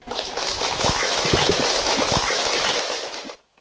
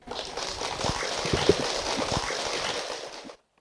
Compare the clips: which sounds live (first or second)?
second